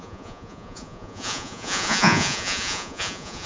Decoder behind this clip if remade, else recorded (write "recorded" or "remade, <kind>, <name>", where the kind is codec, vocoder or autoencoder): remade, vocoder, Vocos